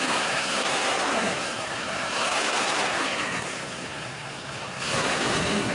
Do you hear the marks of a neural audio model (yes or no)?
yes